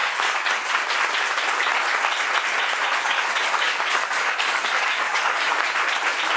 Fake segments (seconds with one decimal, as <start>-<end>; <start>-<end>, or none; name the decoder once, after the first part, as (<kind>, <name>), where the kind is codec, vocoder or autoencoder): 0.0-0.7 (codec, DAC); 3.0-5.5